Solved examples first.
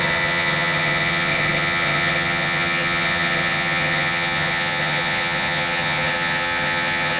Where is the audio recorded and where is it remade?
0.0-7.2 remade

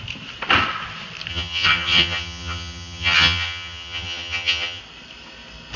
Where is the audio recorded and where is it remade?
0.0-1.3 recorded; 1.3-4.8 remade; 4.8-5.8 recorded

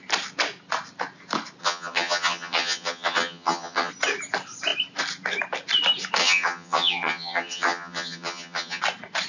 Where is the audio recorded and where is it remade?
0.0-1.6 recorded; 1.6-3.9 remade; 3.9-6.2 recorded; 6.2-8.8 remade; 8.8-9.3 recorded